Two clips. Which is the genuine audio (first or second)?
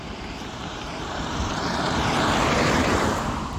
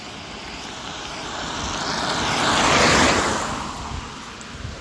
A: second